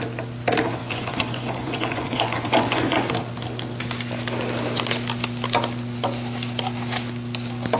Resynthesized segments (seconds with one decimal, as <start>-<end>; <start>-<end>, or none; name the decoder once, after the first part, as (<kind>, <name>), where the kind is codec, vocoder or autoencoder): 0.8-3.1 (vocoder, Vocos)